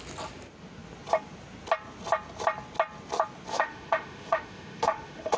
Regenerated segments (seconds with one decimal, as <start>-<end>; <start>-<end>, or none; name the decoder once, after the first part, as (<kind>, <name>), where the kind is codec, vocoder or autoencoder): 3.5-5.4 (autoencoder, DAC-VAE)